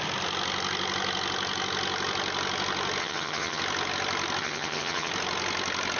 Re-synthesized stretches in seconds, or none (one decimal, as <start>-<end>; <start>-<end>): 3.0-3.6; 4.4-5.1